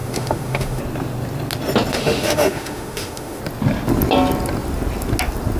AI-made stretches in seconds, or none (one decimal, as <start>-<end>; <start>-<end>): 0.0-0.8; 1.9-3.4